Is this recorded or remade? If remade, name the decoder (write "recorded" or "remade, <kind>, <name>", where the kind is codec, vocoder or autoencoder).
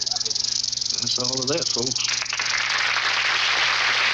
recorded